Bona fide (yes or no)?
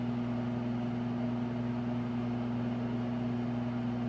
yes